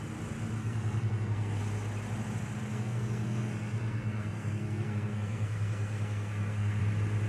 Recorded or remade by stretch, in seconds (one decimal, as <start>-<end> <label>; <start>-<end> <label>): 0.0-0.6 recorded; 0.6-1.6 remade; 1.6-2.7 recorded; 2.7-6.8 remade; 6.8-7.3 recorded